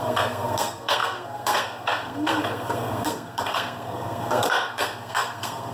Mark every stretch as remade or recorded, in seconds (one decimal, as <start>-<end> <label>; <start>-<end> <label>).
0.0-5.7 remade